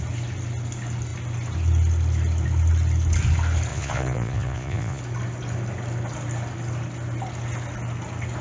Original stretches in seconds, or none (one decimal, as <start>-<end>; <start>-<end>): 0.0-3.7; 5.0-8.4